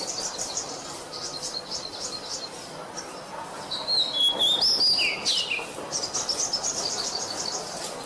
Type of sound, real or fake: real